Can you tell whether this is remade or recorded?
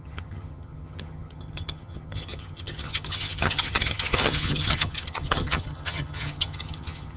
remade